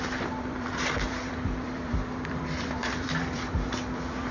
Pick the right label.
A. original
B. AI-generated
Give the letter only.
B